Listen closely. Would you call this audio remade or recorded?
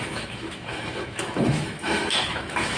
remade